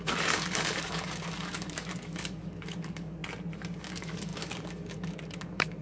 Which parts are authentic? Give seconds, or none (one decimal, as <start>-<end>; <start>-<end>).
3.2-3.8